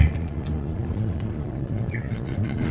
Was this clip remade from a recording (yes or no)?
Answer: yes